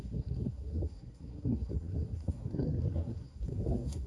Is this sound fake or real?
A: fake